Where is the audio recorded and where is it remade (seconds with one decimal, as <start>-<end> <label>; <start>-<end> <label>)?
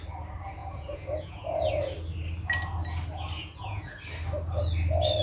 0.0-0.6 recorded; 0.6-1.7 remade; 1.7-3.4 recorded; 3.4-4.0 remade; 4.0-5.2 recorded